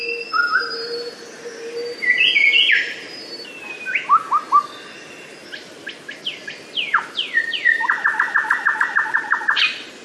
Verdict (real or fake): real